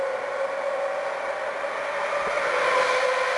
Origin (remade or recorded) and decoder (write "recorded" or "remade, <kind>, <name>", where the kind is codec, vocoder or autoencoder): recorded